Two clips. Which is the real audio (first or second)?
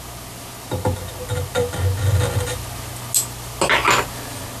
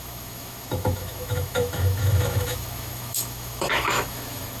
first